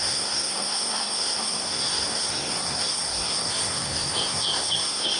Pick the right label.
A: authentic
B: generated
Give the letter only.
B